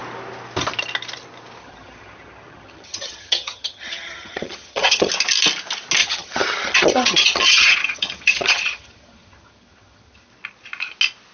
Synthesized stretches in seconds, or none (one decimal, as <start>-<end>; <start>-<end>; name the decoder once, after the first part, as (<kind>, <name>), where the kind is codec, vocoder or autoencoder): 1.6-5.1 (vocoder, HiFi-GAN); 6.0-10.3